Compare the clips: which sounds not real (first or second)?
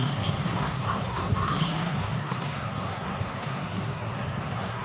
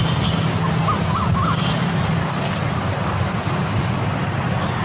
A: first